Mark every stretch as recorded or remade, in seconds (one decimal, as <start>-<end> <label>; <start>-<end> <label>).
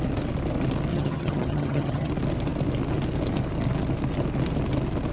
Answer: 0.0-0.9 recorded; 0.9-2.1 remade; 2.1-5.1 recorded